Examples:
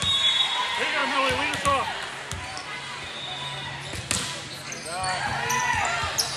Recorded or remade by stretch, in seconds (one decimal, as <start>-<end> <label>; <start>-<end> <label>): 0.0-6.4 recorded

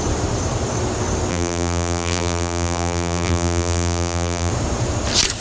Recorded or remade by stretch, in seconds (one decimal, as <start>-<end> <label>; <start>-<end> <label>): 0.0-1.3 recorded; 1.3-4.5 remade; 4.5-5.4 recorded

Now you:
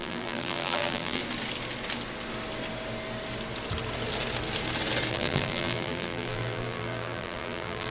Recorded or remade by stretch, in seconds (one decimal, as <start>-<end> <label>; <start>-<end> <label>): 0.0-1.2 remade; 1.2-5.1 recorded; 5.1-7.9 remade

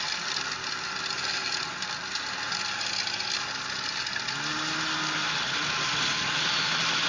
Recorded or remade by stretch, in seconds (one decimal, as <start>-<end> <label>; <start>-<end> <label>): 0.0-7.1 recorded